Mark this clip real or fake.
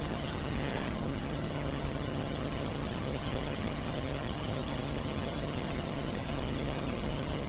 fake